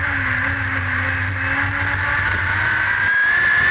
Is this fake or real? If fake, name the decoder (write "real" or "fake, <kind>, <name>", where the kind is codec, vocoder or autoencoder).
real